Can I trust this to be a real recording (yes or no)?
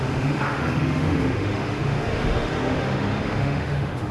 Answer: no